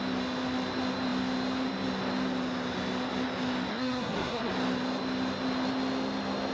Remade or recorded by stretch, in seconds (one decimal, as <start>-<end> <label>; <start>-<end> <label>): 0.0-3.7 recorded; 3.7-4.5 remade; 4.5-6.5 recorded